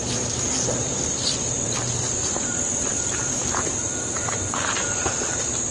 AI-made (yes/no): yes